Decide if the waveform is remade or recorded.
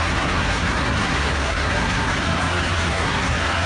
remade